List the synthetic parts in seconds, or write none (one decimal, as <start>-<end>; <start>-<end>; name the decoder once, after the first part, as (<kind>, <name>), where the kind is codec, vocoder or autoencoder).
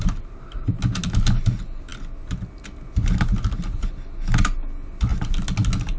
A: none